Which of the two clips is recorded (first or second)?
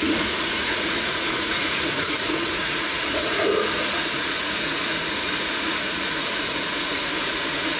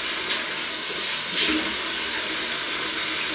second